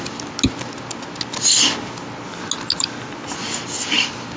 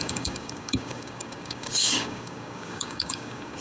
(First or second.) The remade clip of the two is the second